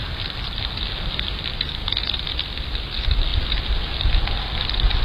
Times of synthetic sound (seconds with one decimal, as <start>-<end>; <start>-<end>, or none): none